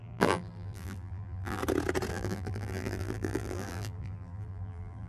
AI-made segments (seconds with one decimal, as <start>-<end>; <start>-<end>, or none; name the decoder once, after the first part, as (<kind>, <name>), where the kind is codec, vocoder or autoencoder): 0.0-1.6 (vocoder, BigVGAN v2); 2.1-5.1